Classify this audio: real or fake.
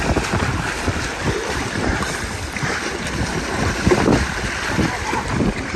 fake